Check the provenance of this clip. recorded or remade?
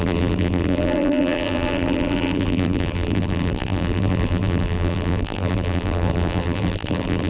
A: remade